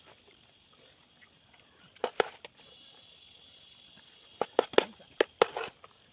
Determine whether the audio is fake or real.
real